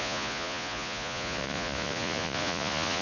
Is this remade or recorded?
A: remade